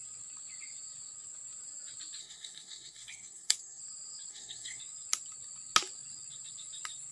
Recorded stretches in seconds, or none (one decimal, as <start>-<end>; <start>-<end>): 0.0-2.2; 3.8-4.3; 4.8-7.1

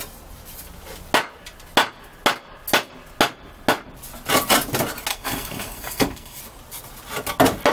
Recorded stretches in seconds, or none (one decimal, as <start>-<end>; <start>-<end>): 0.0-5.1; 6.4-7.7

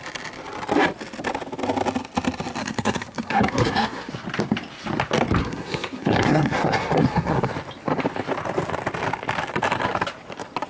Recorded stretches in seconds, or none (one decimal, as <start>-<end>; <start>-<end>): 0.0-2.6; 4.1-5.4; 7.5-10.7